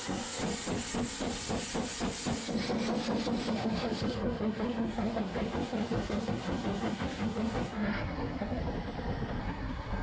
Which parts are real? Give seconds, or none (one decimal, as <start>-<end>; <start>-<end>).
0.4-3.5; 8.6-9.4